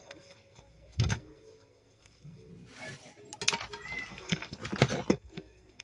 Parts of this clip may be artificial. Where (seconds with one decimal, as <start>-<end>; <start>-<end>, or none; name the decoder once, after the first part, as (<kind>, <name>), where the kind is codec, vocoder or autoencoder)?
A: 0.0-2.5 (codec, SNAC); 4.1-4.6; 5.1-5.8